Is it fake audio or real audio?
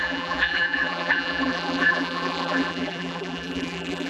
fake